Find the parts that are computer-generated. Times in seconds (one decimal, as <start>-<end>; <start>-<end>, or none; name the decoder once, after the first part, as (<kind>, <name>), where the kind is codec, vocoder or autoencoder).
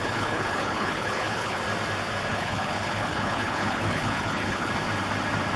0.0-1.6 (codec, HILCodec); 2.3-4.7